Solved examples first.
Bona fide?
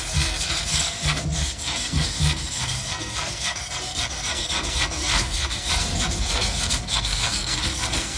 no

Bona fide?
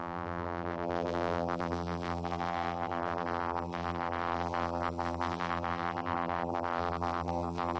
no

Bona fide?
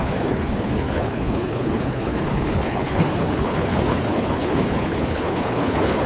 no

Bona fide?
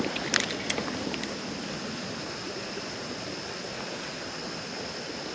yes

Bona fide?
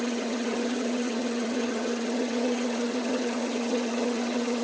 no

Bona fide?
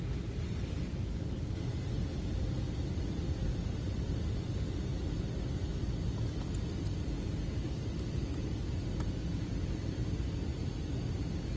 yes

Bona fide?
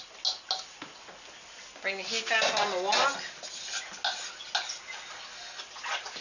yes